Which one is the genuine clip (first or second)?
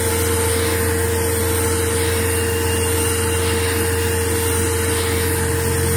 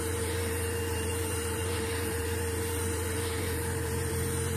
first